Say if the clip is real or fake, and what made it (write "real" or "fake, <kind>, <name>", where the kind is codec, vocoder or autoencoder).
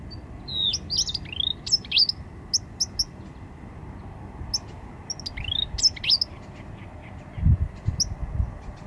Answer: real